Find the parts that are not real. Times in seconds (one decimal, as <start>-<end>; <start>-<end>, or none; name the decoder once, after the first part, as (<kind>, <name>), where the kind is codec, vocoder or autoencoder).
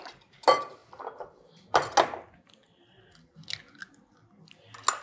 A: none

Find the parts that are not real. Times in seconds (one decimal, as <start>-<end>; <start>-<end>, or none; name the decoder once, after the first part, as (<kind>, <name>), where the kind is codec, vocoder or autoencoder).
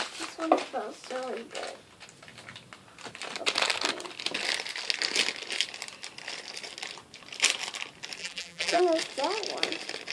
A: 8.2-8.8 (vocoder, BigVGAN v2)